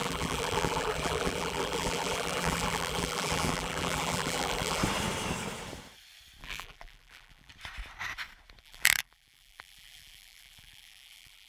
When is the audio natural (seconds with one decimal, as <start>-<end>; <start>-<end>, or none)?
4.8-6.4; 7.5-8.6